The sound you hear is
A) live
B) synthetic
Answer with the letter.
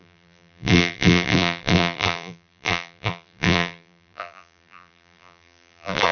B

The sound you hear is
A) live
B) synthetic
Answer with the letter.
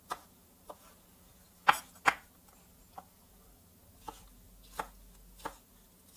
A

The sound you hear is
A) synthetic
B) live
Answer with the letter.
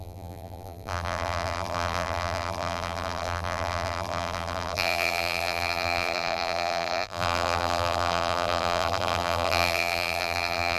A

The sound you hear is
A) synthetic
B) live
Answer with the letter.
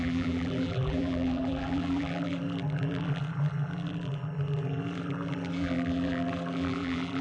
A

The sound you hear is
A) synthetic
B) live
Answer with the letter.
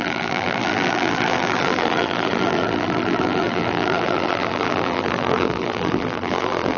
A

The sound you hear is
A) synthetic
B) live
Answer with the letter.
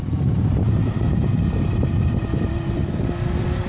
A